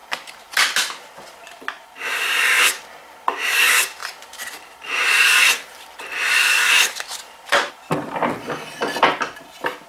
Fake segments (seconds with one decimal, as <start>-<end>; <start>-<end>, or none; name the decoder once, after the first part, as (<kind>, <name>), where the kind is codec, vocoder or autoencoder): 0.0-1.6 (vocoder, BigVGAN v2); 4.0-7.7